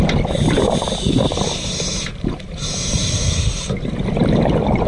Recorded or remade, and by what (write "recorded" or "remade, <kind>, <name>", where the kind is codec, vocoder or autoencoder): remade, vocoder, BigVGAN v2